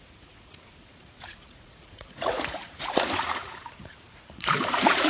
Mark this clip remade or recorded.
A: remade